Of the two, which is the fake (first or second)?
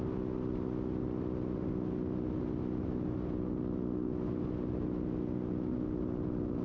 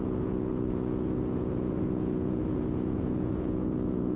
second